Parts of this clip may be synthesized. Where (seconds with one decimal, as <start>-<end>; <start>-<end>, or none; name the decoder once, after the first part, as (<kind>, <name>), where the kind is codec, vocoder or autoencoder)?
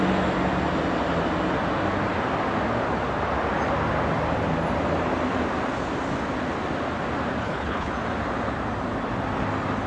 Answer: 7.4-7.9 (codec, HILCodec)